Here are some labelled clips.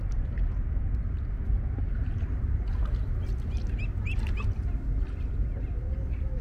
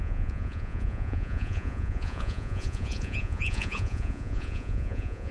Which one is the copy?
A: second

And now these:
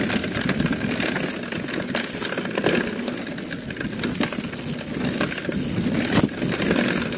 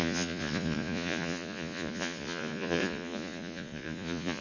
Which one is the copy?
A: second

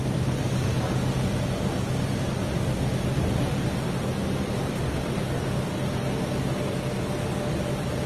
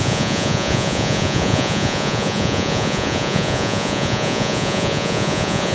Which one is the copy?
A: second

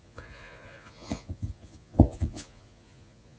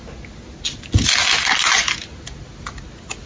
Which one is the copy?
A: first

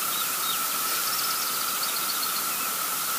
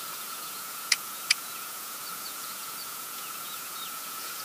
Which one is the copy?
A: second